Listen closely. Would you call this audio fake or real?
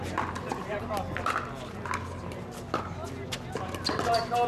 real